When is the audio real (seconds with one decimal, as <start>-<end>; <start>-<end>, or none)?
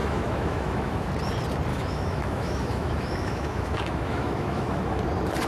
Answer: 1.1-1.7; 5.0-5.5